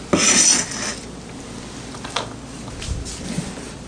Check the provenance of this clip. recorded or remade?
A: recorded